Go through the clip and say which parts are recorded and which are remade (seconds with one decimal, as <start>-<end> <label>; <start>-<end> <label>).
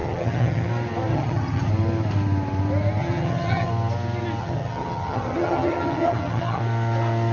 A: 0.0-0.7 remade; 0.7-1.1 recorded; 1.1-1.7 remade; 1.7-3.0 recorded; 3.0-3.7 remade; 3.7-4.4 recorded; 4.4-6.6 remade; 6.6-7.3 recorded